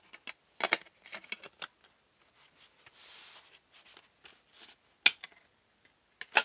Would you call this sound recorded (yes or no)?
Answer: yes